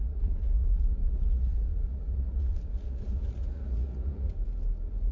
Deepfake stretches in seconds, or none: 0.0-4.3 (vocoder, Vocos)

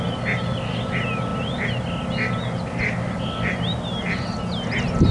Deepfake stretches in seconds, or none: none

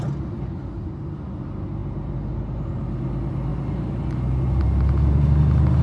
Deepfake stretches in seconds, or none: none

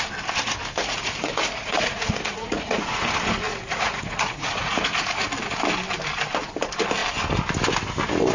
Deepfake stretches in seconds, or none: 0.8-3.0 (vocoder, Vocos); 3.5-5.2